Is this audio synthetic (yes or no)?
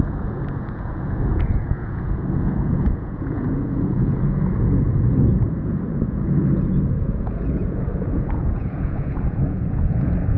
yes